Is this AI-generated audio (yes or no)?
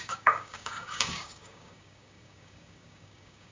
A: yes